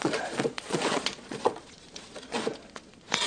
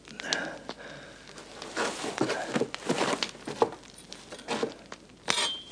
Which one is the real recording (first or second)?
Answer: second